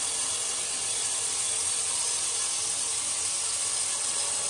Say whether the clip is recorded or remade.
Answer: recorded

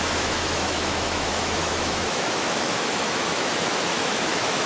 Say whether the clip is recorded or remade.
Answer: remade